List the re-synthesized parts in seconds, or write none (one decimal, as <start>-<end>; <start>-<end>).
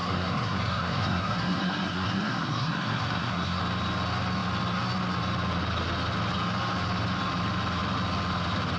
0.0-3.6